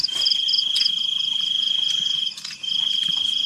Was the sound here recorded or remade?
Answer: recorded